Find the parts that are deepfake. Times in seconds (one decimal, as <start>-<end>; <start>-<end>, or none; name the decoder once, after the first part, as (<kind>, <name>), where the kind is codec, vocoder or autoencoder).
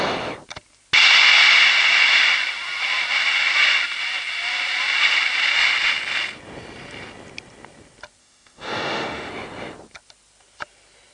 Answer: 8.2-9.3 (autoencoder, DAC-VAE)